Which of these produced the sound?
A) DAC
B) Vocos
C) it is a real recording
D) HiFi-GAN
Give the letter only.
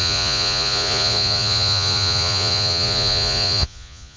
B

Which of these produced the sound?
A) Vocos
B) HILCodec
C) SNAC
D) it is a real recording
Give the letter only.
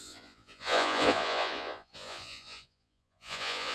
A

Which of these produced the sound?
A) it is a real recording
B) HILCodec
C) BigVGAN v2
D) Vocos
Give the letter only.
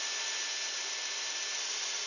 A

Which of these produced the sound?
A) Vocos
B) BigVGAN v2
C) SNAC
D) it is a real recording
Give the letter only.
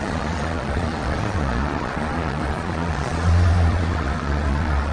A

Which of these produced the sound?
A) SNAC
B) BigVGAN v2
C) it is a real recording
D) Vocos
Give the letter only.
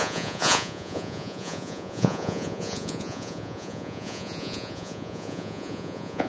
D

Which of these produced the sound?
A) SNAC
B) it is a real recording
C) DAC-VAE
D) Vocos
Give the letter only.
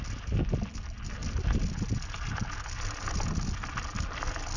B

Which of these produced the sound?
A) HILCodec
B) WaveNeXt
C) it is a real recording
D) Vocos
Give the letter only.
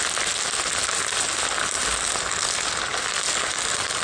C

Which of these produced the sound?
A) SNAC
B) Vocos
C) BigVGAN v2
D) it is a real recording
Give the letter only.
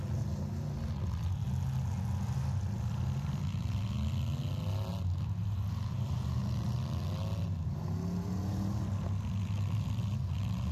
D